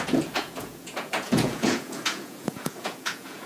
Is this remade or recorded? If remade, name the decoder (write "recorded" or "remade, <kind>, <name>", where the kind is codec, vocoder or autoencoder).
remade, vocoder, Vocos